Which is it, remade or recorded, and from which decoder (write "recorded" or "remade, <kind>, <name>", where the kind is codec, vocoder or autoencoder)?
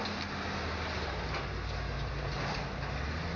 recorded